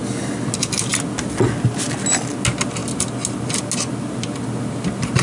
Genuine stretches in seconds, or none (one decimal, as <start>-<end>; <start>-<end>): 0.0-5.2